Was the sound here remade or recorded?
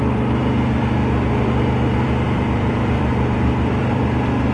remade